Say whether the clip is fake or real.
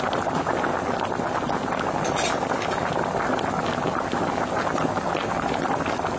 real